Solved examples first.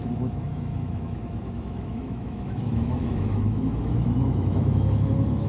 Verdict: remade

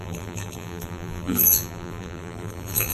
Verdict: remade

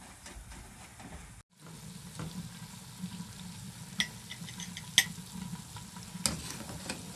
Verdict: recorded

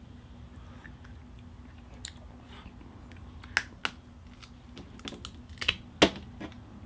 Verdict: recorded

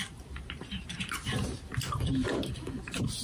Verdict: remade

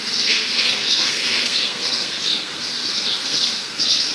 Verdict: remade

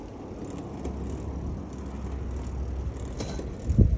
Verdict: recorded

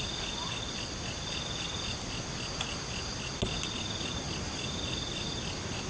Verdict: recorded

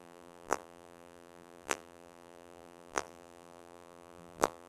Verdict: remade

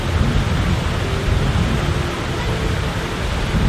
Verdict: recorded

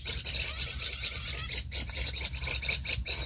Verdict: recorded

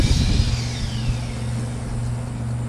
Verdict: recorded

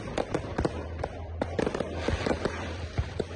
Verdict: remade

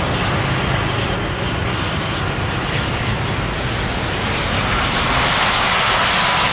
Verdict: recorded